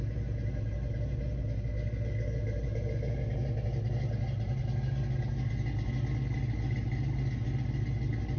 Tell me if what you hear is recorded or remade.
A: recorded